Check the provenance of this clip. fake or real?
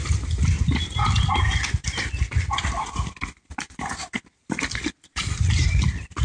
real